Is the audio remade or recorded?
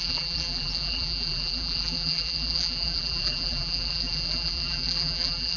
remade